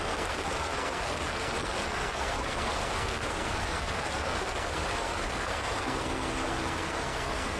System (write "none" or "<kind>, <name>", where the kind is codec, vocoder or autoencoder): codec, SNAC